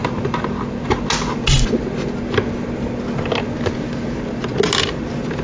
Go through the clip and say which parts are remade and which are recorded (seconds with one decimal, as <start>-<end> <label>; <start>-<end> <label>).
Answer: 0.0-5.4 recorded

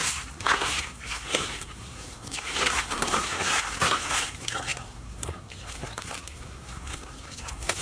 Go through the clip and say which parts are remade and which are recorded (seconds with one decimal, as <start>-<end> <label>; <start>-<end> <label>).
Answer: 0.0-7.8 remade

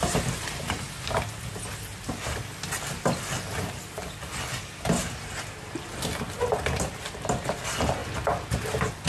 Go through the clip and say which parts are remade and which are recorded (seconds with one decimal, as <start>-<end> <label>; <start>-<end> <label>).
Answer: 0.0-9.1 recorded

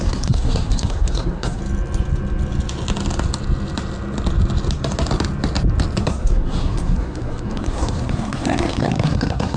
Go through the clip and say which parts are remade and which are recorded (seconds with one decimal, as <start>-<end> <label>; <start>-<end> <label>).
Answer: 0.0-1.6 remade; 1.6-6.0 recorded; 6.0-9.6 remade

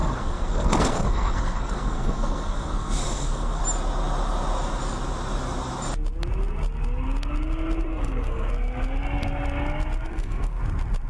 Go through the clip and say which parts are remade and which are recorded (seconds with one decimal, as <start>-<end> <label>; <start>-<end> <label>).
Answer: 0.0-3.6 remade; 3.6-7.9 recorded; 7.9-8.5 remade; 8.5-10.1 recorded; 10.1-10.6 remade; 10.6-11.1 recorded

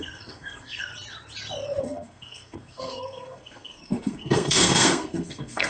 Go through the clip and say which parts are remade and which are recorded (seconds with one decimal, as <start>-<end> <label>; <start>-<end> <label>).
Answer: 0.0-0.9 remade; 0.9-1.8 recorded; 1.8-5.7 remade

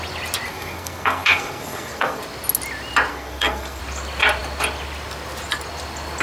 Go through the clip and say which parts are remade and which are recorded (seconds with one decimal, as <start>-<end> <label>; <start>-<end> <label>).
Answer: 0.0-0.5 recorded; 0.5-2.2 remade; 2.2-3.1 recorded; 3.1-3.8 remade; 3.8-6.2 recorded